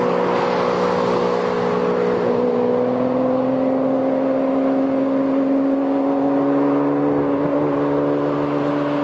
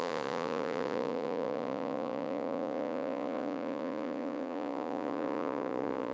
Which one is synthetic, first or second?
second